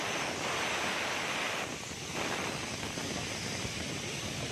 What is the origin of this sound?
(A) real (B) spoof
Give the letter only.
A